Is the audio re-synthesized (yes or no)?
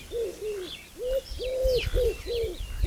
no